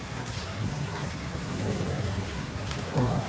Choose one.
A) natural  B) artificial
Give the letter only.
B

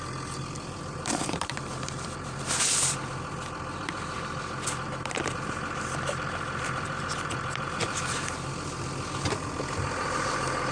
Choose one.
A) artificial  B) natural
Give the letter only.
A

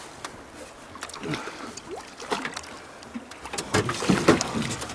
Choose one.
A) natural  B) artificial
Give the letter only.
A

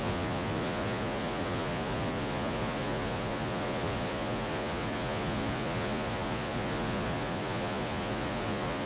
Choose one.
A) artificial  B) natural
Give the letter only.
A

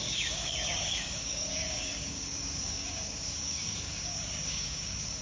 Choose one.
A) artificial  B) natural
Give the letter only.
A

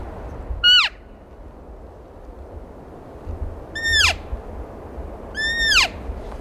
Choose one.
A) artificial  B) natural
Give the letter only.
B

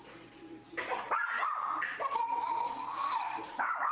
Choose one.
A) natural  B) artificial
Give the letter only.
B